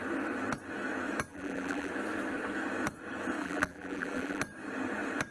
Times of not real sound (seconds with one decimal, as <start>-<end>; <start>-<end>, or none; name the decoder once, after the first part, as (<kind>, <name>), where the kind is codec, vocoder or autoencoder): 1.3-1.9 (vocoder, BigVGAN v2); 3.4-4.4